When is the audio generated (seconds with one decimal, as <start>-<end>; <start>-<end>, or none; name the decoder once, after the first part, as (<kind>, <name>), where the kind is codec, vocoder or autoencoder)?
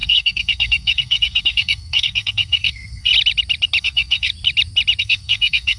0.0-3.1 (codec, SNAC); 3.8-4.3; 5.0-5.8